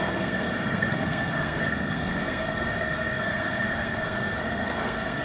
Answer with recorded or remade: remade